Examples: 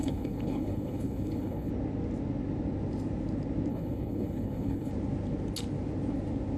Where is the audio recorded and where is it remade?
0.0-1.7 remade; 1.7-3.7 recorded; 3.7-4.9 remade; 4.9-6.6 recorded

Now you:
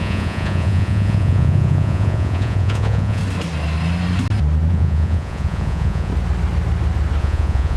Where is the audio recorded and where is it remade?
0.0-3.2 remade; 3.2-4.7 recorded; 4.7-6.1 remade; 6.1-7.2 recorded; 7.2-7.8 remade